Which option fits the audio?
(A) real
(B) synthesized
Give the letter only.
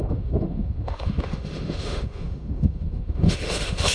B